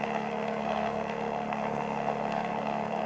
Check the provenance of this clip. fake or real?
fake